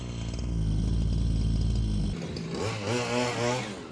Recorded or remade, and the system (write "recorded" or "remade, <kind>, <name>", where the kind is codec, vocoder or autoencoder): recorded